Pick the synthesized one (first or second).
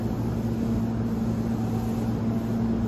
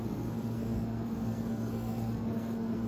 second